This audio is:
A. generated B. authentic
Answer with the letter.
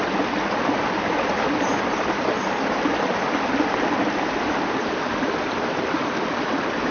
B